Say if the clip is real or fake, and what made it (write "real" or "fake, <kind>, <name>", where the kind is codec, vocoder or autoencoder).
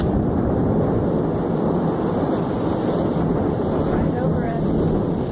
fake, vocoder, BigVGAN v2